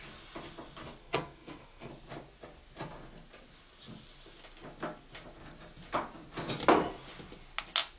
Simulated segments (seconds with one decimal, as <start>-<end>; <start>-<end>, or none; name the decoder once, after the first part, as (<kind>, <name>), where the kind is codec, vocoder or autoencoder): 1.0-1.9 (codec, SNAC)